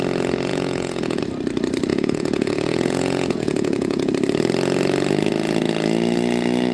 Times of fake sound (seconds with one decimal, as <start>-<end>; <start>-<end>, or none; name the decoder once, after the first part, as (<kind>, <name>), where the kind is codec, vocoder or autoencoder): 0.5-1.2 (vocoder, Vocos); 1.9-4.1